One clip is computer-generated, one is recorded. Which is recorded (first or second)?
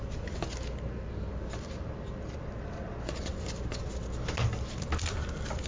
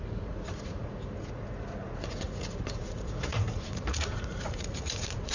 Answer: first